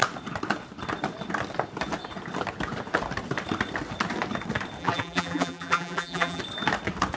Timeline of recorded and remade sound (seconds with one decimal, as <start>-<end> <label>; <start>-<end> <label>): 0.0-4.8 recorded; 4.8-6.4 remade; 6.4-7.2 recorded